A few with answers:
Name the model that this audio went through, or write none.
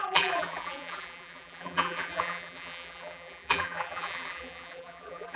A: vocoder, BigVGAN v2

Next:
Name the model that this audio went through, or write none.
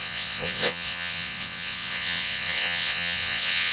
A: vocoder, WaveNeXt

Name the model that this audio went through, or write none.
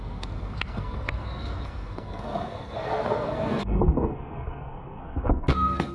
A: codec, SNAC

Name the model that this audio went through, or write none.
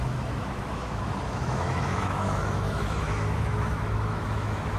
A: autoencoder, DAC-VAE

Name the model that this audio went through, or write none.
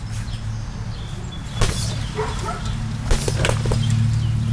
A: none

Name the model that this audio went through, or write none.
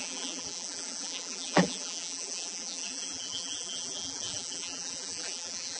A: vocoder, BigVGAN v2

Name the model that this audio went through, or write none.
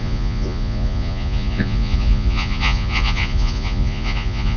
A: vocoder, Vocos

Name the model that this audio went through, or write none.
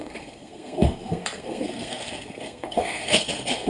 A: codec, SNAC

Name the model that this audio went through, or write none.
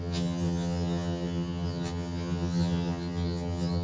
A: vocoder, HiFi-GAN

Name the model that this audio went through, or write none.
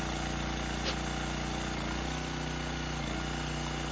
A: none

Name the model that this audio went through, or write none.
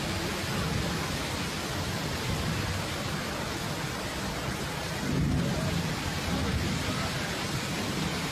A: none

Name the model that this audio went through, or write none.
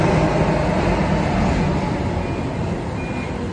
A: none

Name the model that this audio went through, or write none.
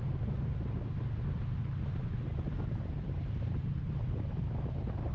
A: vocoder, BigVGAN v2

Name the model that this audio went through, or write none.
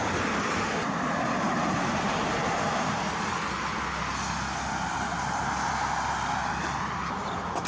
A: none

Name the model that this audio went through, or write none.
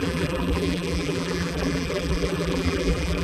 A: vocoder, BigVGAN v2